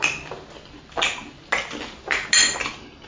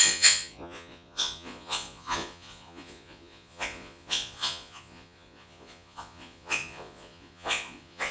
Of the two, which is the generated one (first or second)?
second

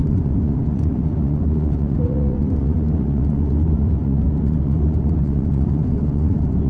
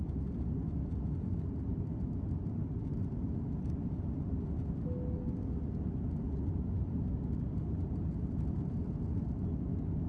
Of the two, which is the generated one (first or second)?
first